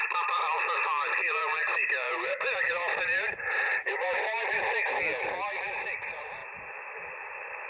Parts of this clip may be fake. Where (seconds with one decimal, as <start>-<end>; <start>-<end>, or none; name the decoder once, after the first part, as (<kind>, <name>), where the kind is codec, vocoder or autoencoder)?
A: 0.0-6.4 (vocoder, BigVGAN v2); 7.0-7.7